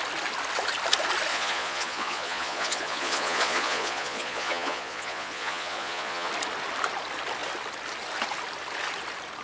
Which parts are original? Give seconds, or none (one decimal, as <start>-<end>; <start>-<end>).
0.0-1.3; 6.3-9.4